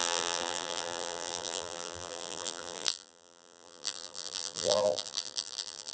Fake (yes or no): yes